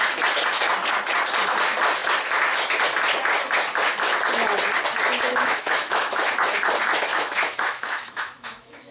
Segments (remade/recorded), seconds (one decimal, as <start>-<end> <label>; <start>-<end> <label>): 0.0-5.3 recorded; 5.3-6.3 remade; 6.3-7.1 recorded; 7.1-8.9 remade